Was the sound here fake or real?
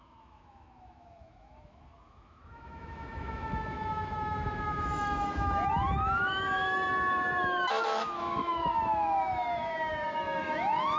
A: fake